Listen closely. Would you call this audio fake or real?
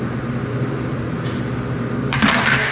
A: real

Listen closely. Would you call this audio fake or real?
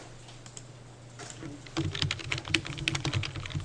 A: real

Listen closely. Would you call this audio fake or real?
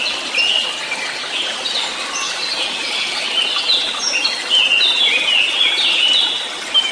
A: real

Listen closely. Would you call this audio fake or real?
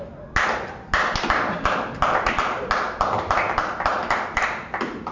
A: real